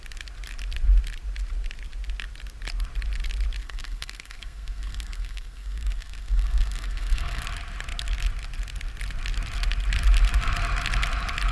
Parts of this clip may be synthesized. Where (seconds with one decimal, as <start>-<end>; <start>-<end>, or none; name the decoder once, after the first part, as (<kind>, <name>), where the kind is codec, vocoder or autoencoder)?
3.6-7.4 (codec, SNAC)